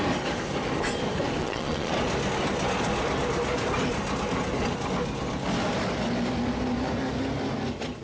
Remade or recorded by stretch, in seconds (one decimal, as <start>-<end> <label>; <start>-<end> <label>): 0.0-1.4 recorded; 1.4-1.9 remade; 1.9-8.0 recorded